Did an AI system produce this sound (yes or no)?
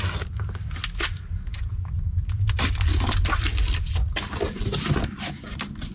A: no